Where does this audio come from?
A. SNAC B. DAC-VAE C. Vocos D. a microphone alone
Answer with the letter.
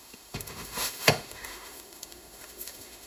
B